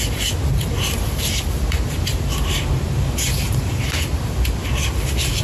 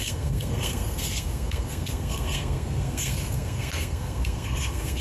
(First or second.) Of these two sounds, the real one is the first